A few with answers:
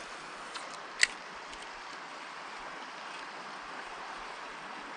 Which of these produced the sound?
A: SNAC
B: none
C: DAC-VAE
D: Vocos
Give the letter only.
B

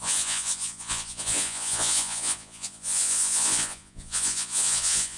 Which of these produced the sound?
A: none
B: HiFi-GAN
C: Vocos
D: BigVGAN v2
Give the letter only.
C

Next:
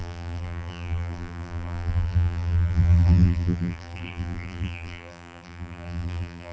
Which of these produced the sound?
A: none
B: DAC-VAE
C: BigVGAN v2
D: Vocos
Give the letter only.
C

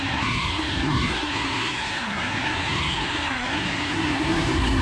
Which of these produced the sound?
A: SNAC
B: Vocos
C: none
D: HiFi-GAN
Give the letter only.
A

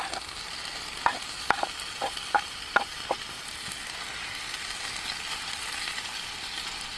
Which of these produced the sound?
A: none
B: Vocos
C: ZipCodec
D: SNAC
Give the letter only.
A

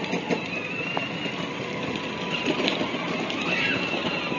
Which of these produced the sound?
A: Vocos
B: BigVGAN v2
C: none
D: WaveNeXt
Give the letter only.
C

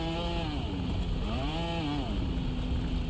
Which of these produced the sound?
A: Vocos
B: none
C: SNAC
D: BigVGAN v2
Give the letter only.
B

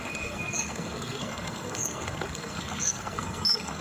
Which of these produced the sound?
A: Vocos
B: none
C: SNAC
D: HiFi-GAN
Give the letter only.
C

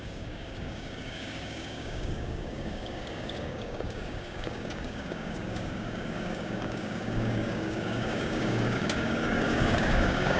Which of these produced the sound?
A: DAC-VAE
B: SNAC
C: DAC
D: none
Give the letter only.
C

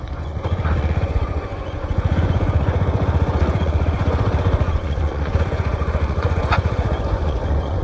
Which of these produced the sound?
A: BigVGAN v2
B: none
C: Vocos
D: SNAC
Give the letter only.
C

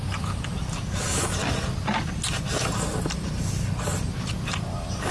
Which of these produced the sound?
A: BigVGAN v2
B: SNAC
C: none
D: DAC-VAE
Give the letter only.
C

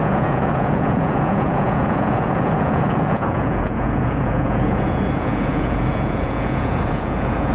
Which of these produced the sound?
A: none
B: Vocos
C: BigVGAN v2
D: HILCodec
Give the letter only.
B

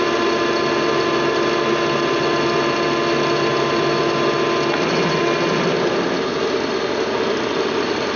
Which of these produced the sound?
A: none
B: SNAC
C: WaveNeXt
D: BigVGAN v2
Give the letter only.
A